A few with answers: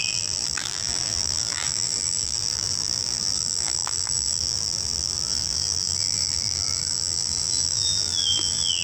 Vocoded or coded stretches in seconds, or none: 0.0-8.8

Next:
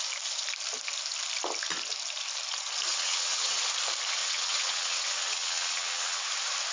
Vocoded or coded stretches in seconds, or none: 2.9-3.6; 4.2-6.2

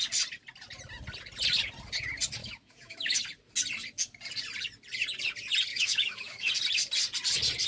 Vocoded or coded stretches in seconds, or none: 2.4-3.2; 5.7-6.5

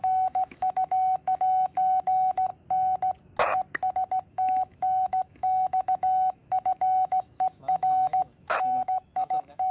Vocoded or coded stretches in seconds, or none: 0.0-2.5; 4.3-9.7

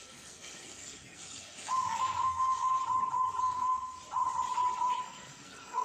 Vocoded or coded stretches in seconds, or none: 0.0-2.8; 3.4-4.0; 5.0-5.8

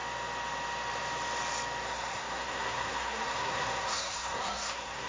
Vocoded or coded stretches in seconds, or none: 1.8-5.1